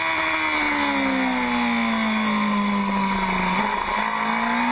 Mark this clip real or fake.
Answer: real